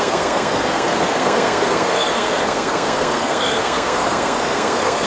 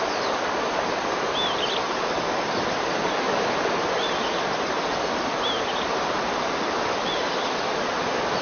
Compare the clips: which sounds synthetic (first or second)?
first